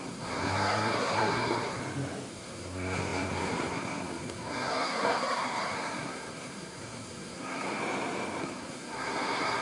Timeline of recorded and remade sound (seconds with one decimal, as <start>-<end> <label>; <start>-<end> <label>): 0.0-1.8 remade; 1.8-2.3 recorded; 2.3-7.8 remade; 7.8-8.4 recorded; 8.4-9.6 remade